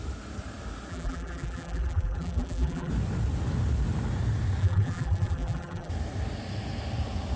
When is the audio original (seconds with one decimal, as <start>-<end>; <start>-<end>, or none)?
0.0-0.9; 2.9-4.6; 5.9-7.4